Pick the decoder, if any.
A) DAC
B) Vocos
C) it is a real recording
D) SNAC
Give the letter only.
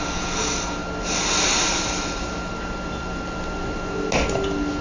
C